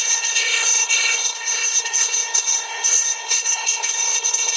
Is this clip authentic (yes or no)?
no